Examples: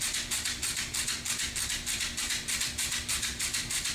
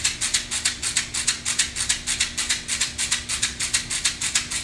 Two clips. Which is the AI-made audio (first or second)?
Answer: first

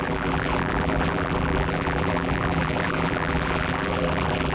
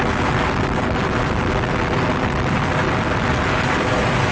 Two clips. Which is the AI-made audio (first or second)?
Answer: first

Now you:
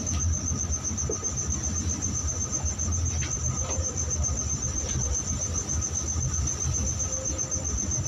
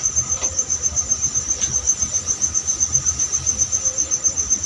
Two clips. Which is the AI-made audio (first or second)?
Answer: second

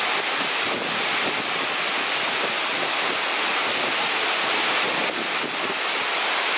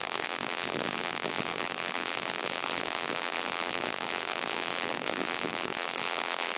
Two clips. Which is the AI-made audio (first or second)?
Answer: second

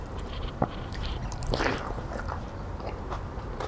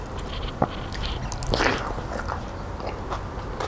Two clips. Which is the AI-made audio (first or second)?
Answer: first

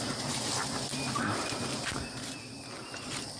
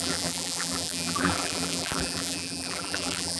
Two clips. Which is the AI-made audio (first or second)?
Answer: second